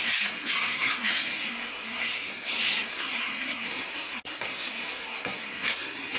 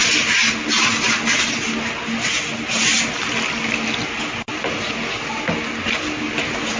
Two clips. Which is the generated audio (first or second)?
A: first